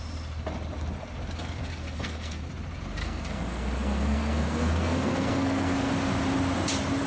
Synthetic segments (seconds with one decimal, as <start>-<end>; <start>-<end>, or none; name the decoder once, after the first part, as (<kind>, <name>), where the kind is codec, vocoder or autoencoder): 1.4-2.5 (codec, SNAC); 3.0-5.9